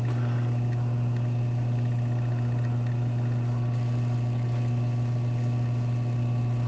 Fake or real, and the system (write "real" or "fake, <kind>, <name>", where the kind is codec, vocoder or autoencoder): real